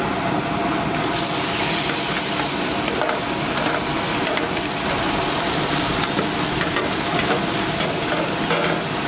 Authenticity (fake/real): real